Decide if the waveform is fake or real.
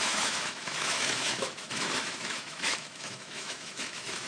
fake